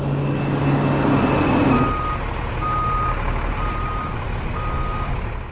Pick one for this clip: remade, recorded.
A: recorded